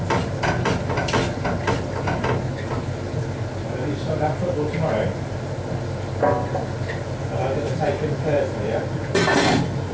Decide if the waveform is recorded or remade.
recorded